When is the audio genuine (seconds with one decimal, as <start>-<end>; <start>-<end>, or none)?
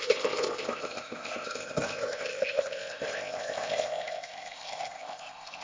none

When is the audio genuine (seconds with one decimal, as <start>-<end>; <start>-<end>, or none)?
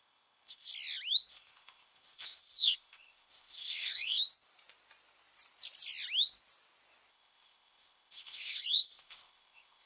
0.7-1.3; 4.2-7.1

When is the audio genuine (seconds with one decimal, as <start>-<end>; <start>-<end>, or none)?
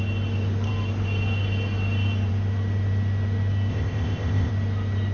0.0-3.7; 4.5-5.1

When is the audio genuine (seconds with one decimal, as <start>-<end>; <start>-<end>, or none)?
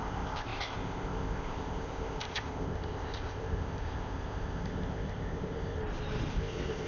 5.8-6.3